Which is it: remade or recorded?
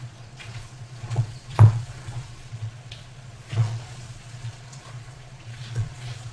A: remade